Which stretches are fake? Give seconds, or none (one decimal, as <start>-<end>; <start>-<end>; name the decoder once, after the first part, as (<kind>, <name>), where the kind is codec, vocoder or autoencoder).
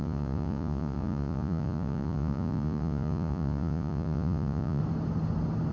0.0-4.8 (vocoder, Vocos)